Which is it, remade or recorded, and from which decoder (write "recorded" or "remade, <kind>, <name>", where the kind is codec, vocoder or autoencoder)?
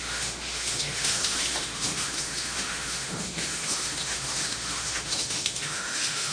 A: remade, autoencoder, DAC-VAE